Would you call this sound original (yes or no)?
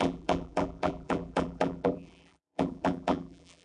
no